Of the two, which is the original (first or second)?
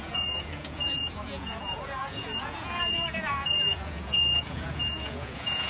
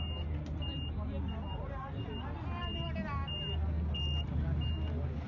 second